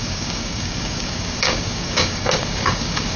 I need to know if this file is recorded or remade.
remade